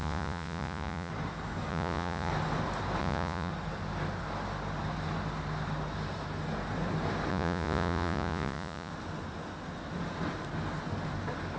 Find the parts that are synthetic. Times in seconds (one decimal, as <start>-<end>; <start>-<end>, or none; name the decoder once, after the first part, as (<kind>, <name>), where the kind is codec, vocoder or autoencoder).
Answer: 0.0-1.1 (vocoder, Vocos); 1.7-2.3; 3.0-3.5; 7.3-8.9